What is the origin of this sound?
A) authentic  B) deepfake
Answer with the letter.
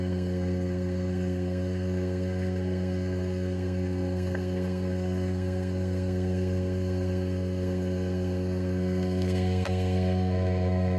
B